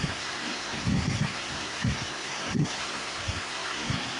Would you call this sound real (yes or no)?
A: no